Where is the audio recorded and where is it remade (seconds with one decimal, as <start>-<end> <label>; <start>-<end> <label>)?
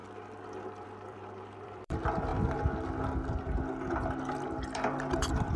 0.0-0.6 recorded; 0.6-2.3 remade; 2.3-4.2 recorded; 4.2-5.6 remade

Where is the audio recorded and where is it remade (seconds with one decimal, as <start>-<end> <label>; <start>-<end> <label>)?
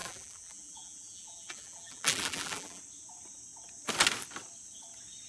0.0-2.8 remade; 2.8-5.3 recorded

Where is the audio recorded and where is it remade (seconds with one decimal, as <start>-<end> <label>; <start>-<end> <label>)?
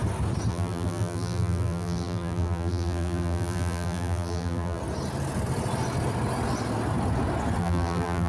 0.0-0.5 recorded; 0.5-4.8 remade; 4.8-7.6 recorded; 7.6-8.3 remade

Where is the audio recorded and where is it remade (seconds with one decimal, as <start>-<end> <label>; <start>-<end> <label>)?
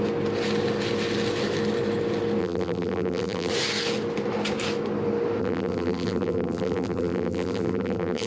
0.0-2.4 recorded; 2.4-3.5 remade; 3.5-5.4 recorded; 5.4-8.3 remade